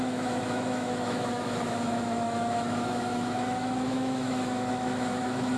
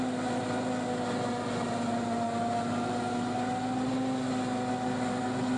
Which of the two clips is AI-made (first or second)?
first